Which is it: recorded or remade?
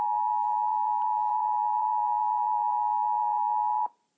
remade